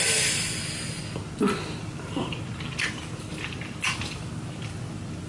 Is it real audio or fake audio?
real